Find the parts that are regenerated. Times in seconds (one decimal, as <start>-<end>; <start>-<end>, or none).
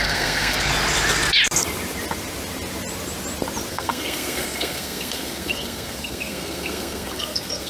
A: 0.0-0.7; 3.7-7.7